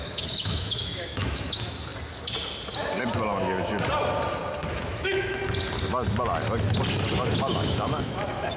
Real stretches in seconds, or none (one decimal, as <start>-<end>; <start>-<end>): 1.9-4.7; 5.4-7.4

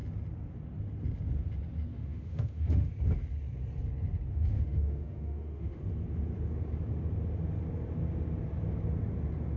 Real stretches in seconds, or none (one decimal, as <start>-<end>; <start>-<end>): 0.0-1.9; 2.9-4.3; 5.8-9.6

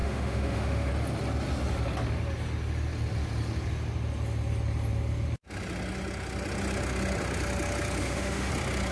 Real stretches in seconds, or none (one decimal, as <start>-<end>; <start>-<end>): 0.9-8.0; 8.5-8.9

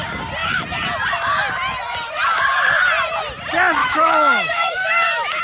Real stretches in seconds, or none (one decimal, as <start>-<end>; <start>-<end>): 0.0-3.8

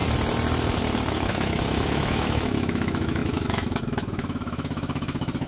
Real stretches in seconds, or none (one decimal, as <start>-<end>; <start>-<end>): 0.0-1.1